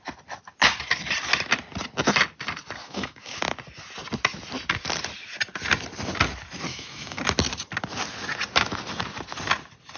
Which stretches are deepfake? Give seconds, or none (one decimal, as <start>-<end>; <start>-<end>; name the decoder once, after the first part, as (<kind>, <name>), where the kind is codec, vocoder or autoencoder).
2.8-3.4 (autoencoder, DAC-VAE); 6.7-7.2